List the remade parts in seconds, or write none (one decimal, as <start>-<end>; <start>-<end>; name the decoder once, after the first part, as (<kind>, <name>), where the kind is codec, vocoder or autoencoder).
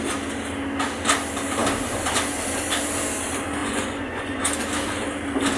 3.6-4.4 (vocoder, Vocos)